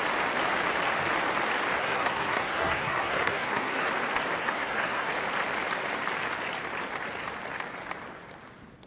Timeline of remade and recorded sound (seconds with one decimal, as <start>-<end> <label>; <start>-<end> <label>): 0.0-1.8 recorded; 1.8-3.9 remade; 3.9-4.4 recorded; 4.4-5.1 remade; 5.1-8.9 recorded